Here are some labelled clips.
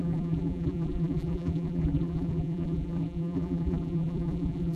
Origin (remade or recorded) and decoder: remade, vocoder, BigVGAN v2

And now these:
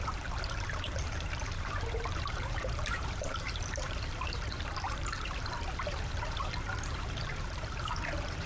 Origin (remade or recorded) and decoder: remade, vocoder, BigVGAN v2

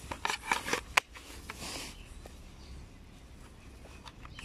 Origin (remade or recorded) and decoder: recorded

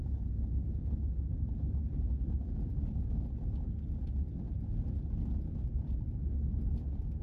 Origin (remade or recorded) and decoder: recorded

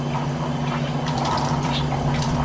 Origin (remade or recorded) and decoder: remade, vocoder, BigVGAN v2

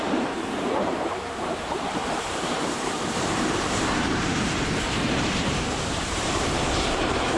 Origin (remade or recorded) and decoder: remade, vocoder, BigVGAN v2